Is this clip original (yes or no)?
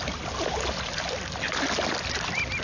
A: yes